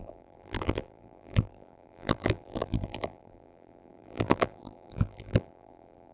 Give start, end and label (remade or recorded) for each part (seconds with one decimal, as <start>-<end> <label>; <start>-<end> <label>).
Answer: 0.0-6.1 remade